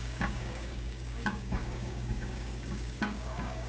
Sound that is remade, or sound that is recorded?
remade